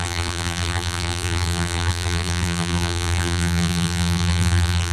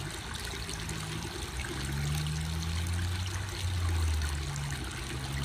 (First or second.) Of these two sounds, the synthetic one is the first